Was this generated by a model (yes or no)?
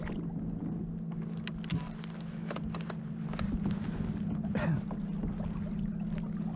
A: no